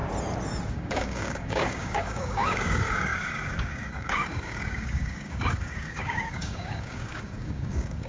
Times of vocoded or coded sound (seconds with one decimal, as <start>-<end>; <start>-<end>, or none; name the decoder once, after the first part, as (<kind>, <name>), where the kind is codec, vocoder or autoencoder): 0.7-8.1 (codec, DAC)